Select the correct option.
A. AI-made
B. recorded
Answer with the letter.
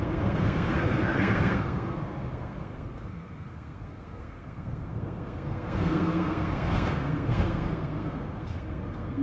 A